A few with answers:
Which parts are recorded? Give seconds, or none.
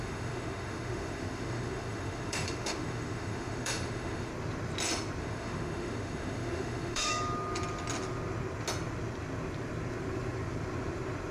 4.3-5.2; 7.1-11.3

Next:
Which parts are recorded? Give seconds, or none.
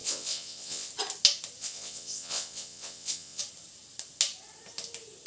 0.9-1.6; 3.4-5.3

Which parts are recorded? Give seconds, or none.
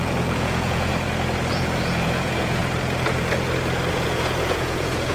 0.9-1.5; 2.6-3.9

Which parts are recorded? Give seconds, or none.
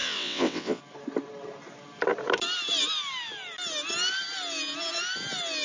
0.8-5.6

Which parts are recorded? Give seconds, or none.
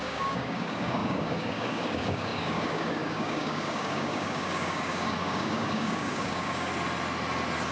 6.7-7.7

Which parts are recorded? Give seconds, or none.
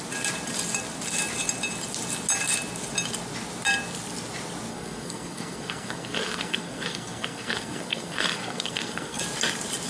0.0-4.7; 9.2-9.9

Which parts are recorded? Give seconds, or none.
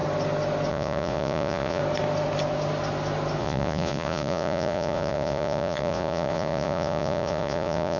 0.0-0.7; 1.8-3.4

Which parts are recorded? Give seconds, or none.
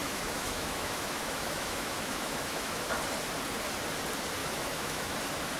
2.9-4.4; 5.1-5.6